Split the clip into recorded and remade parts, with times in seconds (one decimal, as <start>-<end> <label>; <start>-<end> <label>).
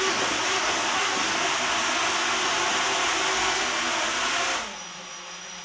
0.0-1.2 recorded; 1.2-1.7 remade; 1.7-3.3 recorded; 3.3-3.9 remade; 3.9-5.6 recorded